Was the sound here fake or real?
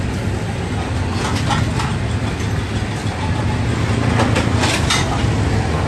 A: real